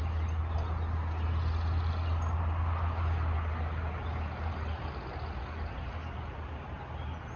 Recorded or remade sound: recorded